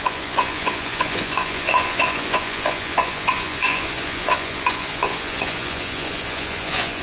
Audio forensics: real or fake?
fake